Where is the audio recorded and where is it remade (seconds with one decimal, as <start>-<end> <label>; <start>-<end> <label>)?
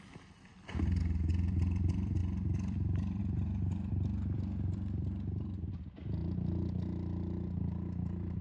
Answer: 0.0-6.2 remade; 6.2-7.6 recorded; 7.6-8.4 remade